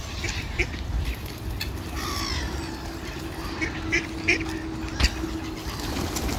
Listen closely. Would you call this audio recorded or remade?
recorded